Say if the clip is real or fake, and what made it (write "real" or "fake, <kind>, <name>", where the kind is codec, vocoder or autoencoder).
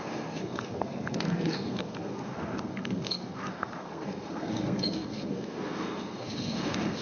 fake, codec, SNAC